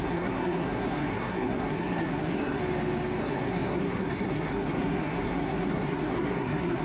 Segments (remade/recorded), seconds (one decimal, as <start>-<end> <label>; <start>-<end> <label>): 0.0-2.6 remade; 2.6-3.2 recorded; 3.2-6.8 remade